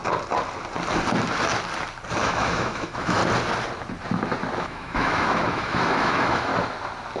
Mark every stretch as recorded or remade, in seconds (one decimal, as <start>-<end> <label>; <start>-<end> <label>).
0.0-2.2 recorded; 2.2-3.2 remade; 3.2-4.6 recorded; 4.6-6.5 remade; 6.5-7.2 recorded